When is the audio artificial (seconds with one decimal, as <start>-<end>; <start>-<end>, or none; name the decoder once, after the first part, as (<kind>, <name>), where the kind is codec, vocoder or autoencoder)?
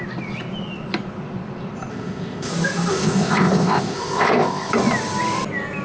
1.9-2.5 (codec, ZipCodec); 2.9-4.7